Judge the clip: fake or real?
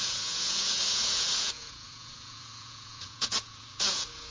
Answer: fake